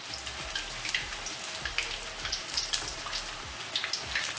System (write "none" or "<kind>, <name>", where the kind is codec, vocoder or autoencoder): none